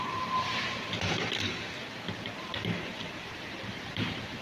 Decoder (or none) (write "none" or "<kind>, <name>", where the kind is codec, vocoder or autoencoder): vocoder, BigVGAN v2